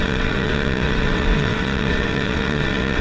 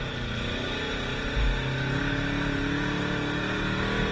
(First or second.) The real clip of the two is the second